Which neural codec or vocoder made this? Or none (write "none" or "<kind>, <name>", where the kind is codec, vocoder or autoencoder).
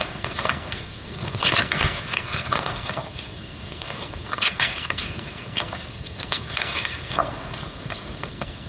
codec, SNAC